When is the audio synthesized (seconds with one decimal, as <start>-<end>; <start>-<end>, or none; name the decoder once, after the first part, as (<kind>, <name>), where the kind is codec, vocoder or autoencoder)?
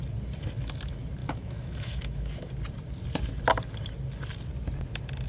1.2-2.5 (autoencoder, DAC-VAE)